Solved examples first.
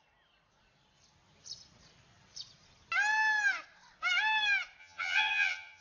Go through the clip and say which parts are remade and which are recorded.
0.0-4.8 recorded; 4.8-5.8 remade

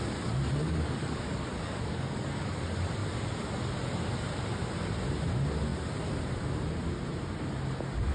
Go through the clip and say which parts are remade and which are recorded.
0.0-0.6 recorded; 0.6-2.6 remade; 2.6-8.1 recorded

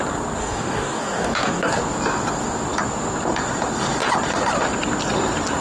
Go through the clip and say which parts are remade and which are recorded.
0.0-0.4 recorded; 0.4-1.8 remade; 1.8-5.6 recorded